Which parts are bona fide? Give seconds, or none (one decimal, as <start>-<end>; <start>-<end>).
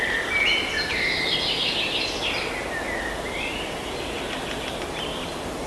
0.0-5.7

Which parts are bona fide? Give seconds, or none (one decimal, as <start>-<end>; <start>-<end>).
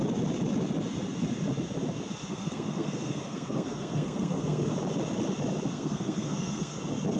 0.0-2.3; 4.7-5.7; 6.8-7.2